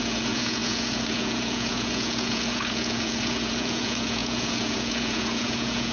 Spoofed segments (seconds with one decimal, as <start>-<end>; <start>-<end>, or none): 0.0-5.9